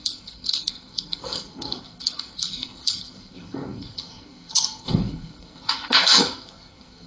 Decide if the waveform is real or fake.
fake